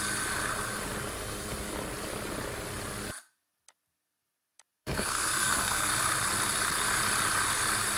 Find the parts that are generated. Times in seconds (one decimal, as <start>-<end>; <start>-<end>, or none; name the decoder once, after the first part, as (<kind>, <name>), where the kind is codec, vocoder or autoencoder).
4.8-5.9 (codec, SNAC)